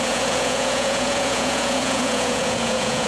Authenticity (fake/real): fake